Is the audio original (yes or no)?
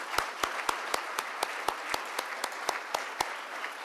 yes